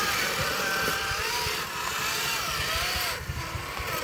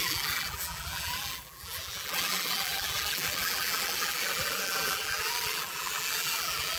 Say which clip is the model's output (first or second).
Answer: second